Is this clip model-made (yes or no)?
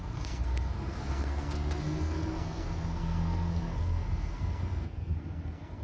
yes